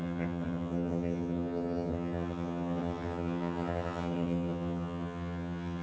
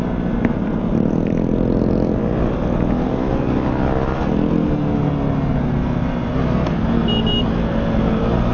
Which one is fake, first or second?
first